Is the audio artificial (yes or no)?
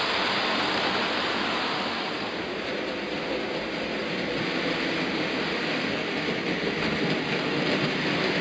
no